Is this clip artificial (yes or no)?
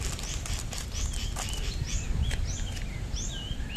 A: yes